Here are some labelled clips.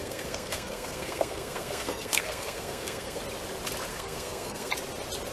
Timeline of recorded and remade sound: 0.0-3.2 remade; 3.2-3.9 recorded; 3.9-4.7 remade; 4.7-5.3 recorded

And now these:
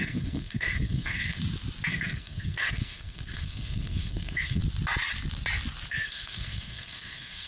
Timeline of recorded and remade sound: 0.0-1.4 remade; 1.4-1.9 recorded; 1.9-4.6 remade; 4.6-5.9 recorded; 5.9-7.5 remade

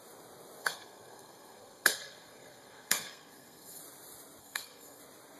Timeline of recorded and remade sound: 0.0-0.6 recorded; 0.6-3.8 remade; 3.8-4.4 recorded; 4.4-5.0 remade; 5.0-5.4 recorded

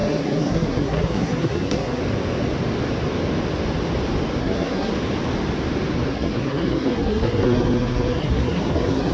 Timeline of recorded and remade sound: 0.0-2.0 remade; 2.0-4.4 recorded; 4.4-4.9 remade; 4.9-6.1 recorded; 6.1-9.1 remade

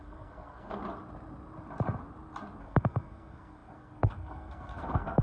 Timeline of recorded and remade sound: 0.0-0.8 remade; 0.8-2.6 recorded; 2.6-5.2 remade

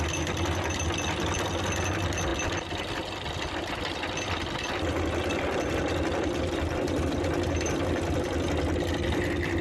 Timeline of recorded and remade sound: 0.0-9.6 recorded

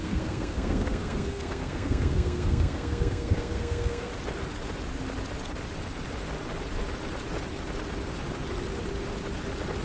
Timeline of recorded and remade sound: 0.0-4.1 remade; 4.1-9.8 recorded